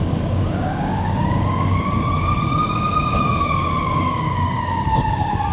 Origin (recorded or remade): remade